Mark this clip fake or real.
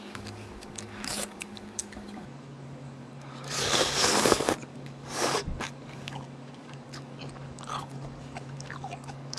fake